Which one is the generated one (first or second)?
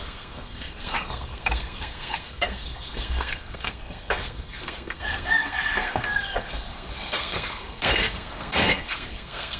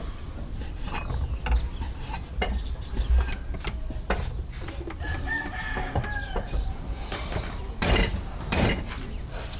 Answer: first